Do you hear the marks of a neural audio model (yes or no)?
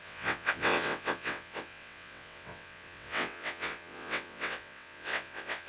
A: yes